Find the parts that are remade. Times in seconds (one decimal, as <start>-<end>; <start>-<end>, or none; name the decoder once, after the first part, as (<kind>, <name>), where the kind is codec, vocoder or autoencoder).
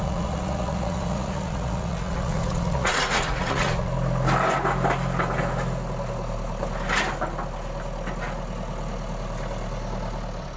0.0-3.9 (vocoder, Vocos)